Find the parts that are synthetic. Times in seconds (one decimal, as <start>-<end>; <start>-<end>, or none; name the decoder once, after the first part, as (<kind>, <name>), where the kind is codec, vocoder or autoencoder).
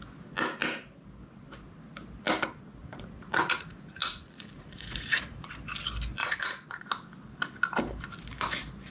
2.8-5.5 (vocoder, Vocos); 6.2-6.8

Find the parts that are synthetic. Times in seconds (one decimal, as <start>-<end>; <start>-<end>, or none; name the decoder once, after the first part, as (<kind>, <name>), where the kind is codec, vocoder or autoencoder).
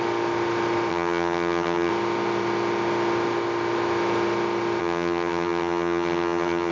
0.9-1.9 (vocoder, HiFi-GAN); 4.8-6.7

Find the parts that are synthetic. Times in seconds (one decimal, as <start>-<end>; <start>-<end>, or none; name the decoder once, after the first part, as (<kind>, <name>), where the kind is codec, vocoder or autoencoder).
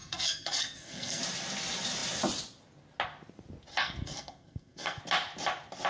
0.0-1.2 (codec, SNAC); 3.7-5.0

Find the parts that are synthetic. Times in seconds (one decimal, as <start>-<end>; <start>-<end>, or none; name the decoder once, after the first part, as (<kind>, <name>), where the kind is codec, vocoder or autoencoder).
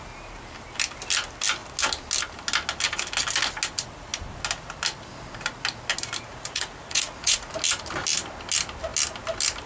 6.3-7.5 (vocoder, Vocos)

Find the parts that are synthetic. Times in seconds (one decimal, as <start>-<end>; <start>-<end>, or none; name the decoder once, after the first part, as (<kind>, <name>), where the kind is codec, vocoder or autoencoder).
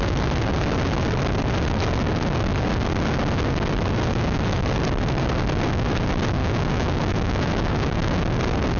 6.4-8.2 (autoencoder, DAC-VAE)